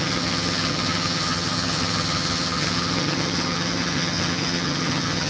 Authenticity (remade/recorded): remade